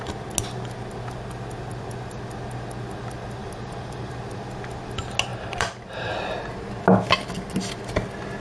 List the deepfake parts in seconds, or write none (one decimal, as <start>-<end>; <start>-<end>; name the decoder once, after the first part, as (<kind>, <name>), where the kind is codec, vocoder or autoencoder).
3.4-4.1 (vocoder, BigVGAN v2); 5.3-6.1